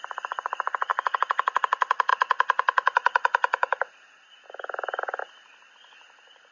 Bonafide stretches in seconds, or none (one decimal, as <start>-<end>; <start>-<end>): 0.0-6.5

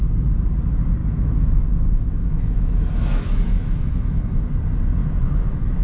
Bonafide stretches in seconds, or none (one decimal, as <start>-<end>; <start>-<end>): 0.0-1.0; 4.5-5.0

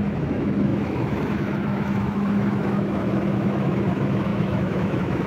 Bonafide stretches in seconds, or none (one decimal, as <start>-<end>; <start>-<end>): none

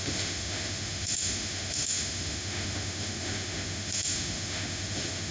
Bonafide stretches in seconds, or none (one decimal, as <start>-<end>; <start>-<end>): none

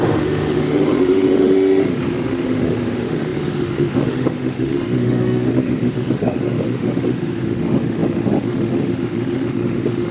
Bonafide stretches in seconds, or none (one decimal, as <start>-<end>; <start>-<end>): none

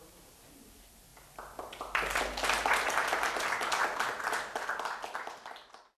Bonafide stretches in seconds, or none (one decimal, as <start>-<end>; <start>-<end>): 0.0-6.0